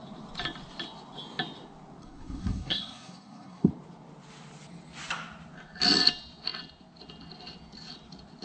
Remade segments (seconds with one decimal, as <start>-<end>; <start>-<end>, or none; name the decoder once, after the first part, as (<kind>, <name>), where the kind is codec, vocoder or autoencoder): 2.0-3.7 (codec, SNAC)